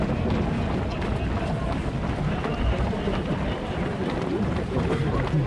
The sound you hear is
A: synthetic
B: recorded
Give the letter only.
B